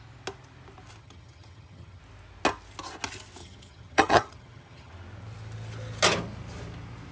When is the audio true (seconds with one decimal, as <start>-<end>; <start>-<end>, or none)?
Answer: 0.0-1.0; 2.0-3.4; 4.9-7.1